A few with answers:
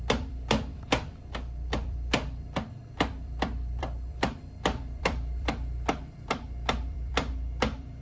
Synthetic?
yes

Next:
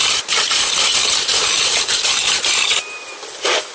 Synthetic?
no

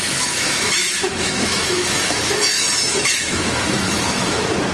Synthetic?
yes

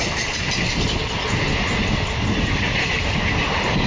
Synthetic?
no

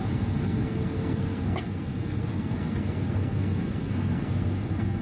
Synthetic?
yes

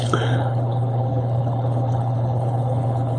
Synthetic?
yes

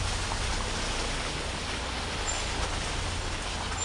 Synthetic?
no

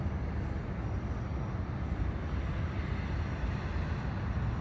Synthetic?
no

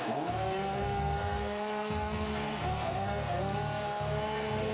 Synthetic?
yes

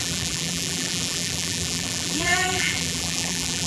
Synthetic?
yes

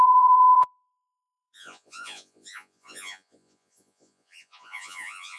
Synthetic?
yes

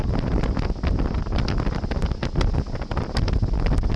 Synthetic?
no